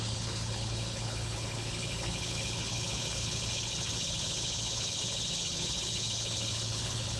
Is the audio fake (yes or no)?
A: yes